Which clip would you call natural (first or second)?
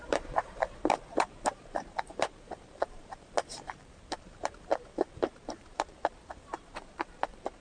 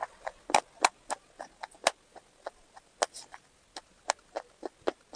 second